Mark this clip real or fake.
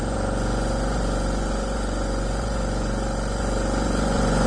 fake